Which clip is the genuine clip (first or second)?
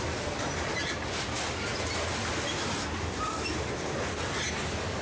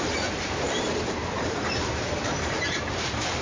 first